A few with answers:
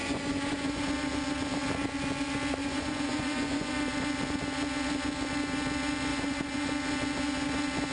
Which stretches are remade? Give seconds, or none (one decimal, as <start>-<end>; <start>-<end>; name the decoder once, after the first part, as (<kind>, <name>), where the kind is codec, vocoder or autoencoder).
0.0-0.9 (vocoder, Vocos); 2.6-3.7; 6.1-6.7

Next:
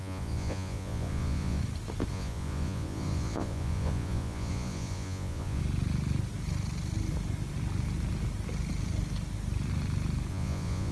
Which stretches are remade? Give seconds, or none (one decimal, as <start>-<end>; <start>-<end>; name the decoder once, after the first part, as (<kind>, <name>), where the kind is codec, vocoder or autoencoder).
0.0-1.6 (vocoder, Vocos); 2.1-5.6; 10.3-10.9

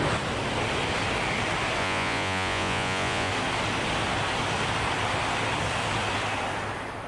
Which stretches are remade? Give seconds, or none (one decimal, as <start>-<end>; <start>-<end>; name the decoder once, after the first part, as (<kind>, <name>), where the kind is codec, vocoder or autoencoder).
1.8-3.3 (vocoder, Vocos)

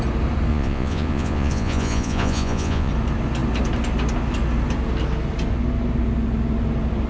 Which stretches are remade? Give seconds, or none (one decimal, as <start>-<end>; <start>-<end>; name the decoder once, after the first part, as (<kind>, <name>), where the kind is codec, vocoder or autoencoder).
0.5-2.9 (vocoder, Vocos)

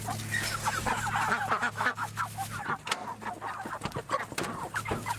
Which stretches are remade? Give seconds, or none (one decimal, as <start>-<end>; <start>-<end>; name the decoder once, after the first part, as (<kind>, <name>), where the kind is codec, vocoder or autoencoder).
1.6-2.6 (autoencoder, DAC-VAE)

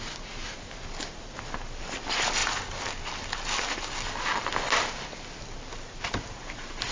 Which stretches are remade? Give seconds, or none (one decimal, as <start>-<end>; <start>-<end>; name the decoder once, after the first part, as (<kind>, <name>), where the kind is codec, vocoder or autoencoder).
none

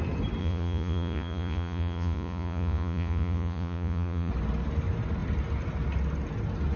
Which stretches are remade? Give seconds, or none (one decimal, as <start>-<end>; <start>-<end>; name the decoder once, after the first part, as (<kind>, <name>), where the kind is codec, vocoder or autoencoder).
0.4-4.3 (vocoder, Vocos)

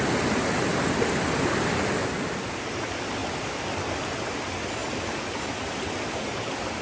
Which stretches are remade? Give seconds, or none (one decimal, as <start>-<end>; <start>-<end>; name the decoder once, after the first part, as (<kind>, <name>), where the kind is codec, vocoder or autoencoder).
none